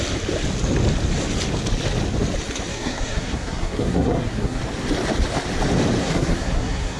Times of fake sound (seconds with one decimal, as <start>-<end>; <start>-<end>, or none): 2.7-4.6; 6.0-7.0